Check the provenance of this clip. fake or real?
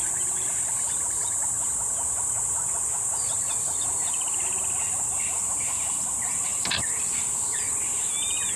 real